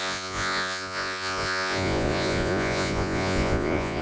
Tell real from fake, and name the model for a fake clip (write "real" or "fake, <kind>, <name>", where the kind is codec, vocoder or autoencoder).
fake, vocoder, Vocos